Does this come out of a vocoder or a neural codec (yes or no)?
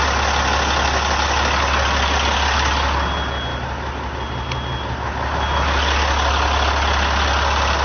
no